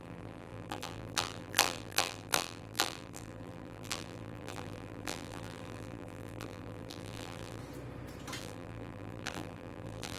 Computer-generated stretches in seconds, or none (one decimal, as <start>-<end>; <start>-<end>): 0.0-7.6; 8.4-10.2